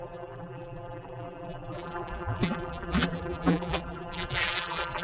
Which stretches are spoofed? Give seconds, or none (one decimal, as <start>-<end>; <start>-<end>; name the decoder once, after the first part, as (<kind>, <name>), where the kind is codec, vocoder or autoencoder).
0.0-5.0 (vocoder, BigVGAN v2)